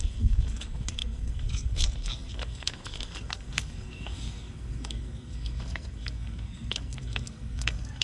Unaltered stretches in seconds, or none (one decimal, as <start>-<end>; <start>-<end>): none